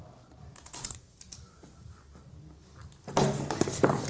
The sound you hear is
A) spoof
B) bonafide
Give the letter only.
B